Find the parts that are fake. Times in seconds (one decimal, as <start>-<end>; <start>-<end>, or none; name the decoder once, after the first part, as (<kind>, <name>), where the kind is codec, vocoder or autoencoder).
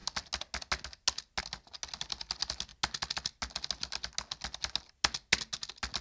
none